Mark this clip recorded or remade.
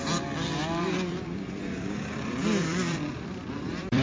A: remade